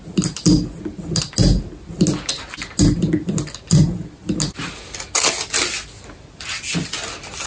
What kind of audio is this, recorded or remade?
recorded